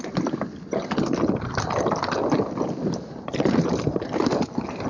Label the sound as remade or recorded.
recorded